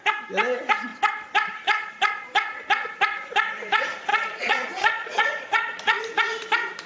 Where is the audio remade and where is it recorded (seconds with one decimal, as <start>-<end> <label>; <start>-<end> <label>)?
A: 0.0-4.1 recorded; 4.1-6.0 remade; 6.0-6.9 recorded

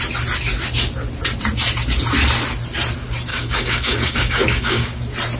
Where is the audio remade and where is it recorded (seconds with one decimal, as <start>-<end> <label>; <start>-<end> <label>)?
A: 0.0-3.3 recorded; 3.3-5.0 remade; 5.0-5.4 recorded

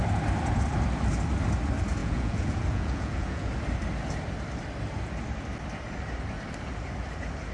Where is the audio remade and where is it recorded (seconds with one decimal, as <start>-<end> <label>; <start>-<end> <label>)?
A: 0.0-2.0 recorded; 2.0-3.5 remade; 3.5-7.5 recorded

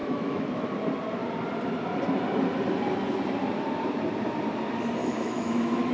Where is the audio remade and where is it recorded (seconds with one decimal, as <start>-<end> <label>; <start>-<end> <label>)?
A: 0.0-0.7 remade; 0.7-5.0 recorded; 5.0-5.9 remade